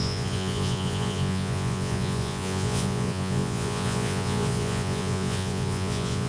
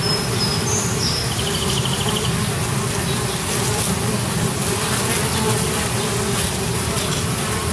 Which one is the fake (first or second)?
first